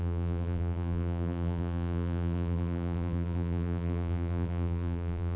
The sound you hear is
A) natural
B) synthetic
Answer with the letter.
B